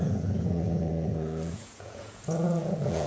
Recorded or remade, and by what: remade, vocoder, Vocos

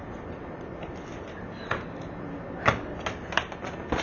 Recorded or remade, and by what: recorded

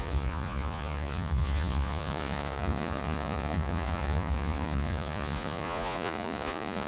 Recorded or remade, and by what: remade, vocoder, Vocos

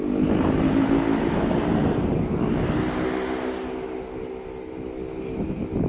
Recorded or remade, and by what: recorded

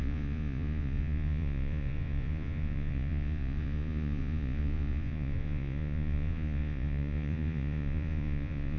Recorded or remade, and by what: remade, vocoder, Vocos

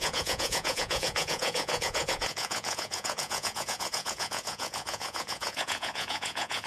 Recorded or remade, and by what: remade, vocoder, Vocos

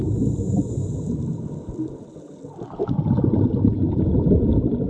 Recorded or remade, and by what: recorded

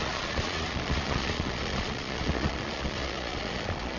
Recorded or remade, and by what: remade, vocoder, Vocos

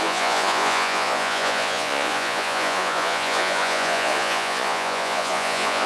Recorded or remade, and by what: remade, vocoder, Vocos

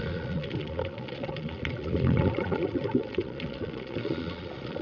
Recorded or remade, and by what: remade, vocoder, Vocos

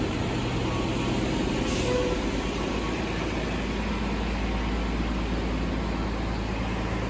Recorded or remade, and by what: recorded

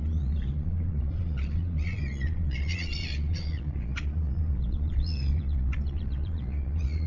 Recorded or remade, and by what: remade, vocoder, Vocos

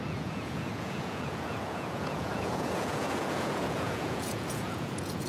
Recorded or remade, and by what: remade, vocoder, Vocos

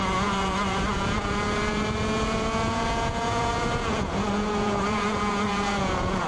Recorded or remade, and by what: remade, vocoder, Vocos